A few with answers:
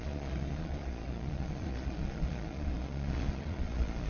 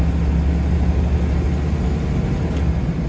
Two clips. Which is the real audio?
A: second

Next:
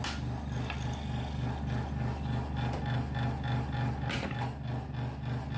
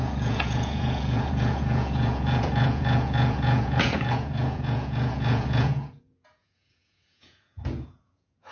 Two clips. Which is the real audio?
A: first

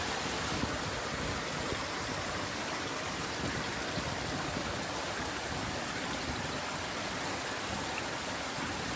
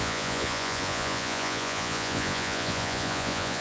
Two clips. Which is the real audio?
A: first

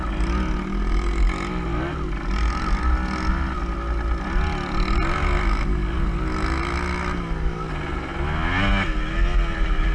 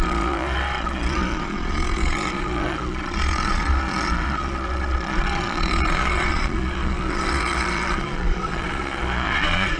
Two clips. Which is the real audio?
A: first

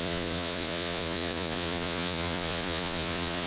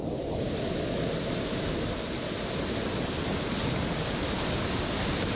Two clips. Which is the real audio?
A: second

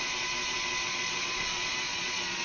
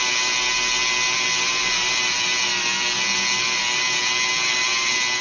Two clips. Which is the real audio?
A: second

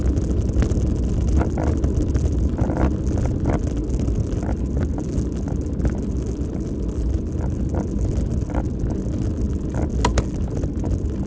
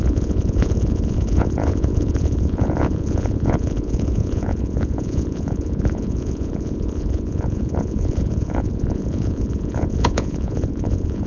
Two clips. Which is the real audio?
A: first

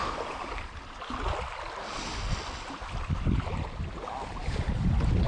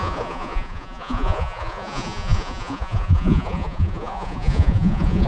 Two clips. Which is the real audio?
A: first